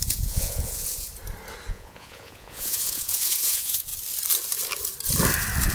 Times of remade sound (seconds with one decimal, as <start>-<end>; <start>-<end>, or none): 0.0-1.1; 1.7-3.9